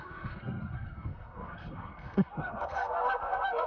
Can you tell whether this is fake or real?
fake